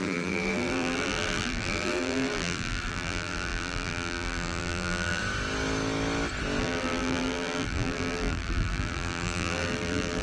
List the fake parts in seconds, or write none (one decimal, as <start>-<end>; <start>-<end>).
0.0-5.2; 6.6-10.2

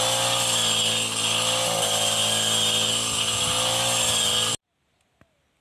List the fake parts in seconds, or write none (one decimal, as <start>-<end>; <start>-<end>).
none

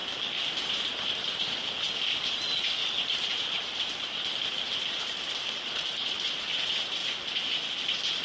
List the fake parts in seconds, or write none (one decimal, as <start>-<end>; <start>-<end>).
2.8-4.1; 7.0-7.5

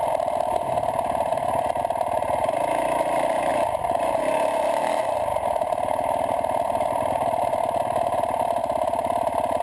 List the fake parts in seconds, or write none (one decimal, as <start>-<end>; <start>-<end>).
1.3-1.8; 3.5-4.2